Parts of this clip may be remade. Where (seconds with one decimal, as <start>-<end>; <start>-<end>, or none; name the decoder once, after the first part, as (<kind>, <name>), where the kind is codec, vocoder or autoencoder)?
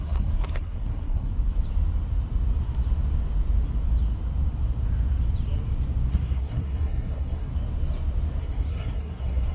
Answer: 0.0-1.3 (codec, SNAC); 6.1-7.5; 8.4-9.5